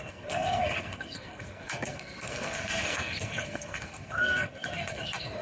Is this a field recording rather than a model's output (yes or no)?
no